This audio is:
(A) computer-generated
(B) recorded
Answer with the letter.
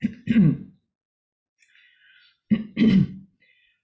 B